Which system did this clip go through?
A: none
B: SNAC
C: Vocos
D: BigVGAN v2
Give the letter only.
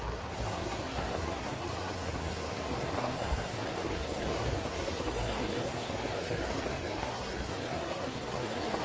B